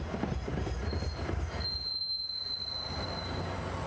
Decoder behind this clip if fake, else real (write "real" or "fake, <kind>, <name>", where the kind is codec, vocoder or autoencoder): real